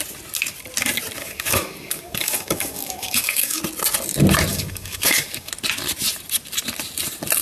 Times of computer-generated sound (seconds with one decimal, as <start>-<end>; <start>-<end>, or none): 1.2-3.6; 4.5-5.5

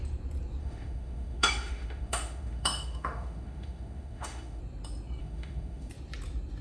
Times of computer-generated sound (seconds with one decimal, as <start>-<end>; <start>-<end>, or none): 0.6-4.6; 5.2-5.9

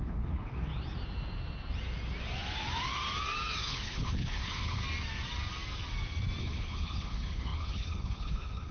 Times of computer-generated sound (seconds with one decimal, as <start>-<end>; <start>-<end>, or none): 0.0-0.7; 3.6-4.8; 6.4-8.7

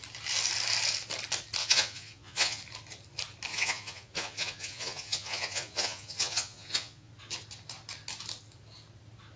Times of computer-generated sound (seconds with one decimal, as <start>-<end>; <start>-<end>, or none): 1.6-2.6; 3.5-7.1

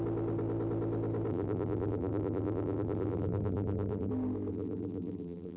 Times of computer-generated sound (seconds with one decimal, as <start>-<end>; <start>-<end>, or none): 1.3-4.1; 4.5-5.6

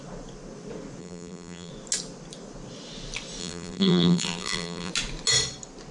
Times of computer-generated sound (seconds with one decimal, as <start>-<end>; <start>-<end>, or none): 1.0-1.7; 3.4-4.9

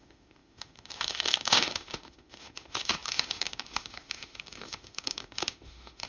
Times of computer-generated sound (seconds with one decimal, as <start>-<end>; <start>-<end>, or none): 0.0-6.1